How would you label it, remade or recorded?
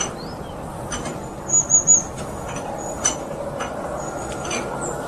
recorded